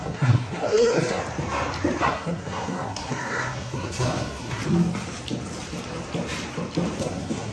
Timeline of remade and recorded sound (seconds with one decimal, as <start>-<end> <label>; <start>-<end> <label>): 0.0-1.2 remade; 1.2-2.0 recorded; 2.0-4.6 remade; 4.6-7.0 recorded; 7.0-7.5 remade